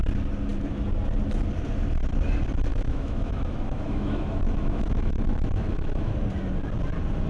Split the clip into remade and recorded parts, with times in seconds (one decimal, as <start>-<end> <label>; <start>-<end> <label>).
0.0-2.7 recorded; 2.7-6.1 remade; 6.1-7.3 recorded